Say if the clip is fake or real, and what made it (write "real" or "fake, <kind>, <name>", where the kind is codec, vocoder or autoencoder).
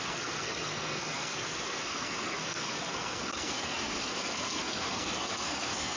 fake, codec, SNAC